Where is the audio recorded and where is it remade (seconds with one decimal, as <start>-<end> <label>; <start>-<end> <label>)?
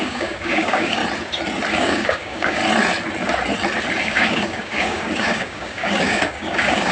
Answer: 0.0-1.0 remade; 1.0-1.7 recorded; 1.7-2.6 remade; 2.6-4.0 recorded; 4.0-6.9 remade